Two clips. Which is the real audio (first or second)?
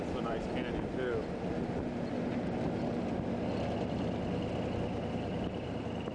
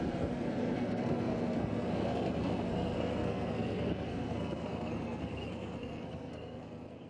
first